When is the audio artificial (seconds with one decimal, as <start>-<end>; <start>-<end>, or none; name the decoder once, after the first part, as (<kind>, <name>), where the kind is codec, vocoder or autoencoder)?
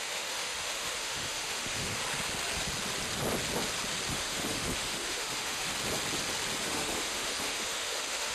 0.0-2.0 (autoencoder, DAC-VAE); 4.1-5.7; 6.6-8.3